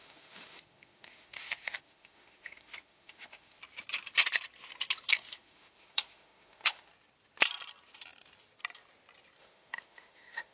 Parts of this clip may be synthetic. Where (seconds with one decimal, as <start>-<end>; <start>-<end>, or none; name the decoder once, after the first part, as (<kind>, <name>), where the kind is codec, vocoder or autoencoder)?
0.0-3.6 (autoencoder, DAC-VAE); 5.1-6.9; 9.4-10.5